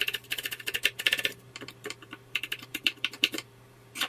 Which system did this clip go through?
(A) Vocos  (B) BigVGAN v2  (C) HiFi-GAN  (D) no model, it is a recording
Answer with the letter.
B